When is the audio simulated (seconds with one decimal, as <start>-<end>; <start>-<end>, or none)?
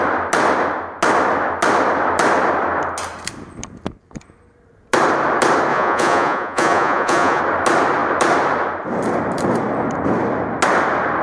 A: 5.7-7.4